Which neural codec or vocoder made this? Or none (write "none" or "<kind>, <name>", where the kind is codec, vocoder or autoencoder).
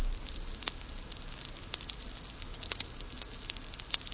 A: none